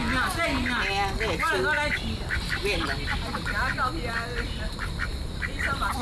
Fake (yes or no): no